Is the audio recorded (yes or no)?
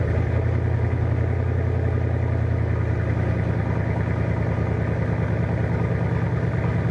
yes